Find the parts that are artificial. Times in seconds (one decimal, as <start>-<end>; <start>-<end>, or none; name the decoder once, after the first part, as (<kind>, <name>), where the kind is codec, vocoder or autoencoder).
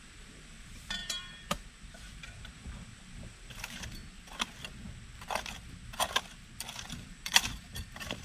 0.0-4.0 (vocoder, BigVGAN v2); 7.0-8.2